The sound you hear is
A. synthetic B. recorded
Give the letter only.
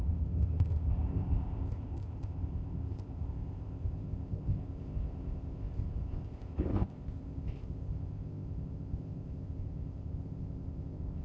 A